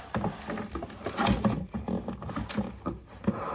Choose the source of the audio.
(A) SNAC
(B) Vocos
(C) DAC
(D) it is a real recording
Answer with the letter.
D